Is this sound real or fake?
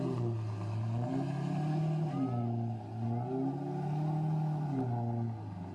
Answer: real